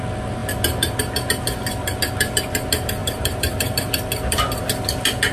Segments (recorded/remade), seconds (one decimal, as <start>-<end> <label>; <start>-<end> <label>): 0.0-3.0 recorded; 3.0-3.9 remade; 3.9-5.3 recorded

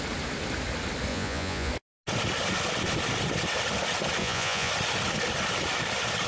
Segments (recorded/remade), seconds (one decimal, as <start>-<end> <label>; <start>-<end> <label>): 0.0-1.1 recorded; 1.1-1.7 remade; 1.7-4.2 recorded; 4.2-4.7 remade; 4.7-6.3 recorded

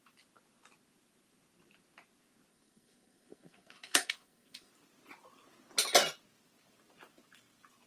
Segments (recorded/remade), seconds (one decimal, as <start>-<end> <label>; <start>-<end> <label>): 0.0-2.5 recorded; 2.5-4.7 remade; 4.7-7.9 recorded

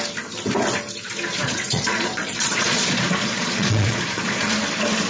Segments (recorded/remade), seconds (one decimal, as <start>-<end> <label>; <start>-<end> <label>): 0.0-1.3 recorded; 1.3-4.4 remade; 4.4-5.1 recorded

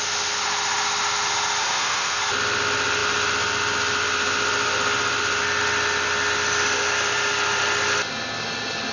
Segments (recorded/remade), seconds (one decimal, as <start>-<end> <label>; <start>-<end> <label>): 0.0-1.6 recorded; 1.6-2.2 remade; 2.2-8.9 recorded

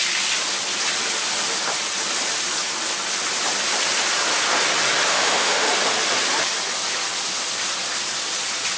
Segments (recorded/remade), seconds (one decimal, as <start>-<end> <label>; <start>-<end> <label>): 0.0-5.1 recorded; 5.1-5.7 remade; 5.7-8.8 recorded

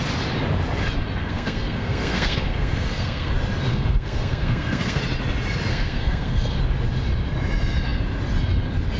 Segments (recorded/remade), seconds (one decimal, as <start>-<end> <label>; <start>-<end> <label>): 0.0-1.2 recorded; 1.2-3.3 remade; 3.3-3.7 recorded; 3.7-5.0 remade; 5.0-5.7 recorded; 5.7-6.6 remade; 6.6-9.0 recorded

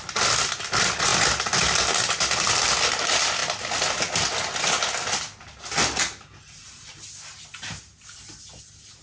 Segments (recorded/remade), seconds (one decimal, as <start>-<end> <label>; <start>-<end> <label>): 0.0-9.0 recorded